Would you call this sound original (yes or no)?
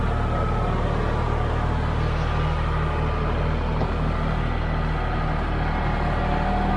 yes